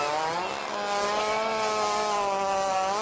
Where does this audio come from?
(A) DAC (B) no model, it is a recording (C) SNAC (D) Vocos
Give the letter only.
B